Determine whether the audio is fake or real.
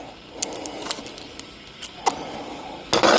real